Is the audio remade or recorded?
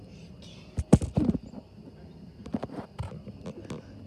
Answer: recorded